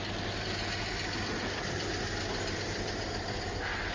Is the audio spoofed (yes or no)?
no